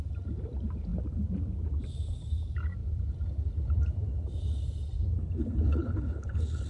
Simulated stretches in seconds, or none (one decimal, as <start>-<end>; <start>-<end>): 5.2-6.7